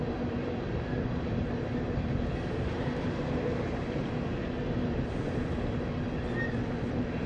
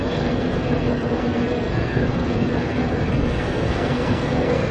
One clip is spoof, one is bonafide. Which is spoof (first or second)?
second